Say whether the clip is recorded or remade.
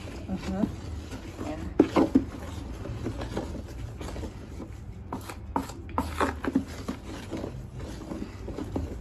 recorded